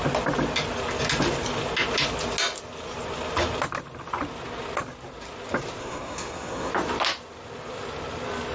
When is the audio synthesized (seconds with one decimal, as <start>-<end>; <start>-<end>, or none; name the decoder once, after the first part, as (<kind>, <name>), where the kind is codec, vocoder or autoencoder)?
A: 5.8-6.7 (codec, SNAC)